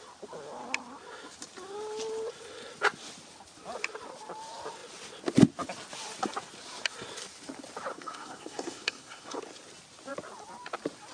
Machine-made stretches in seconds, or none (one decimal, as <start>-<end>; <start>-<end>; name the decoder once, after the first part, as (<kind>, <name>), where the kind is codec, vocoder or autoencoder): 7.9-9.4 (codec, SNAC)